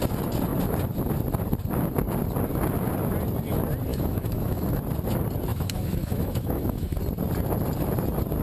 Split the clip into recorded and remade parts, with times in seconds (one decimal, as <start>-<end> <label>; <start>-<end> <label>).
0.0-3.9 recorded; 3.9-4.8 remade; 4.8-5.5 recorded; 5.5-7.0 remade; 7.0-8.4 recorded